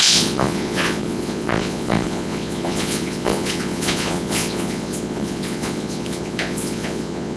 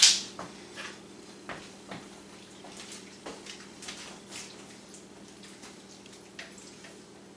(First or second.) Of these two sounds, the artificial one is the first